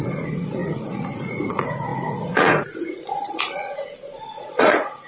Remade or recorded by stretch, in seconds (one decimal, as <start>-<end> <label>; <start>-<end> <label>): 0.0-5.1 remade